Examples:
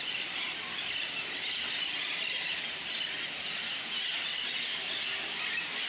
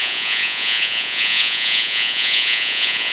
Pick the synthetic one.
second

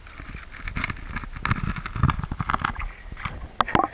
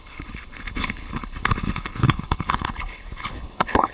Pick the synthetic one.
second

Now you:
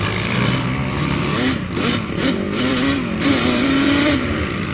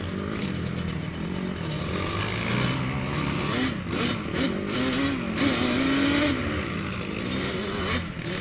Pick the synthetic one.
first